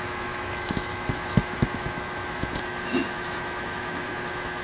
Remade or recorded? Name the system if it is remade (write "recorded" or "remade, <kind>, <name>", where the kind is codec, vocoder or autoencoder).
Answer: remade, autoencoder, DAC-VAE